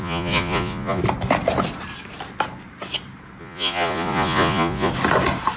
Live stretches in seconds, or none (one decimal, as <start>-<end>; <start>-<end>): 1.0-3.4; 4.9-5.6